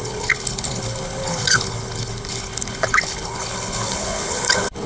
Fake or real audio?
fake